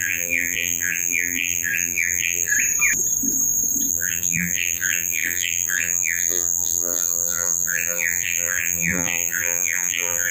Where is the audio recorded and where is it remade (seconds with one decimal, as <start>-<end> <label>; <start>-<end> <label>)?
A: 0.0-2.5 remade; 2.5-3.9 recorded; 3.9-10.3 remade